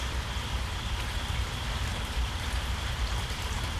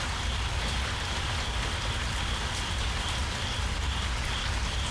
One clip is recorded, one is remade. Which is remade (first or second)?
first